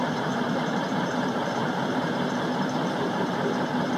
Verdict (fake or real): fake